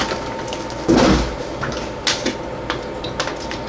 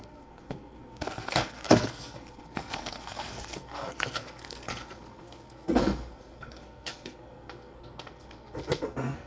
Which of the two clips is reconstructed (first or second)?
second